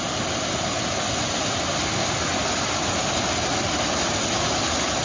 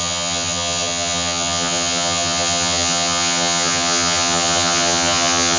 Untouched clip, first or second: first